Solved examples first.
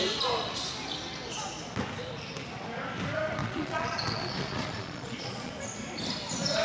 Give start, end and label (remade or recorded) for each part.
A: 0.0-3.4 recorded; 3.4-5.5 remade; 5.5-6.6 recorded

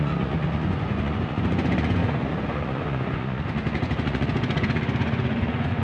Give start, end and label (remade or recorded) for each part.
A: 0.0-5.8 remade

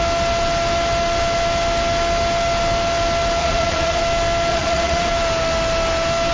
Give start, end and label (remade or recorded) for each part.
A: 0.0-3.4 recorded; 3.4-4.0 remade; 4.0-4.5 recorded; 4.5-5.1 remade; 5.1-6.3 recorded

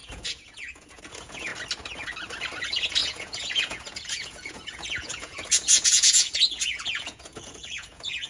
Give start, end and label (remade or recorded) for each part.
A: 0.0-1.5 remade; 1.5-2.6 recorded; 2.6-8.3 remade

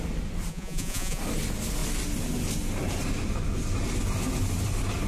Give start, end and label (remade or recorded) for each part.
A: 0.0-0.5 recorded; 0.5-1.2 remade; 1.2-5.1 recorded

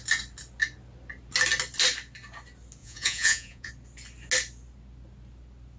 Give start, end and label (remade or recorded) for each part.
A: 0.0-2.8 recorded; 2.8-3.7 remade; 3.7-5.8 recorded